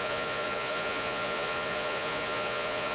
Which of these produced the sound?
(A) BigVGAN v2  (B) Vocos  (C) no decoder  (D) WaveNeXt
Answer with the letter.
B